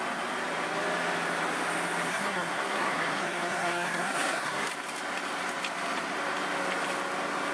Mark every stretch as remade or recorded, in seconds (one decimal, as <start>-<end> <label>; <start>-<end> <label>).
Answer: 0.0-2.1 recorded; 2.1-4.7 remade; 4.7-7.5 recorded